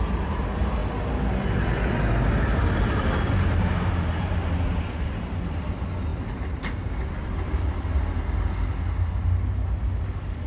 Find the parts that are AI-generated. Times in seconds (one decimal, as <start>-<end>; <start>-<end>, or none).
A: none